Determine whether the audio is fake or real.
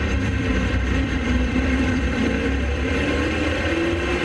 fake